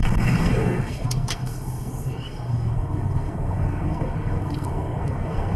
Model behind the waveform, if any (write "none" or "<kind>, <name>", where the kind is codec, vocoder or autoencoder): codec, SNAC